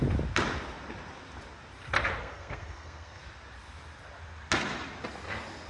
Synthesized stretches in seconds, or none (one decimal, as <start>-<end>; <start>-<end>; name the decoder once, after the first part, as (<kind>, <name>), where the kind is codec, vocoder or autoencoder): 2.2-3.2 (codec, SNAC)